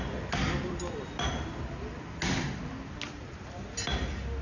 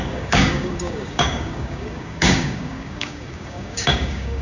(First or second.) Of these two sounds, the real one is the first